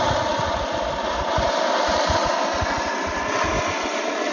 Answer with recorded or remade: recorded